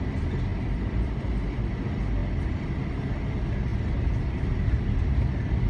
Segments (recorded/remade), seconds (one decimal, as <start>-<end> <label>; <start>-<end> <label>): 0.0-0.5 recorded; 0.5-1.7 remade; 1.7-5.7 recorded